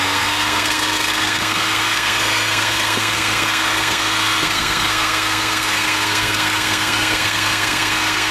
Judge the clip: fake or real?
fake